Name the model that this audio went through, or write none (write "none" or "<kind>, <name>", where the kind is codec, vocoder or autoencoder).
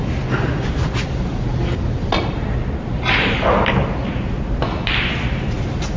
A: vocoder, BigVGAN v2